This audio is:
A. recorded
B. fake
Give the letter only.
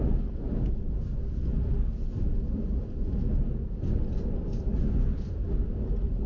A